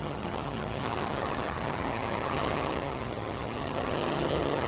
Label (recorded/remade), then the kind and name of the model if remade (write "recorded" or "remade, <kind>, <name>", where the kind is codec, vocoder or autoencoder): remade, vocoder, HiFi-GAN